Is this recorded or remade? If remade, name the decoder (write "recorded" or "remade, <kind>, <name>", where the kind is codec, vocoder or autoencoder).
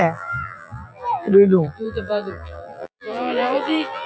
remade, vocoder, BigVGAN v2